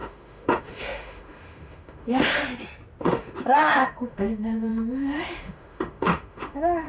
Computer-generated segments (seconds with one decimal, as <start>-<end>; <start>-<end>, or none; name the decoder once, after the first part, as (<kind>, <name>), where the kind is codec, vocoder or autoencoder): 0.0-2.4 (autoencoder, DAC-VAE); 3.0-6.9